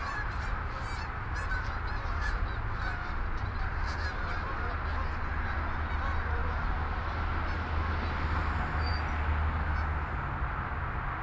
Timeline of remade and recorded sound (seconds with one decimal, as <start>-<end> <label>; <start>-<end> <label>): 0.0-11.2 recorded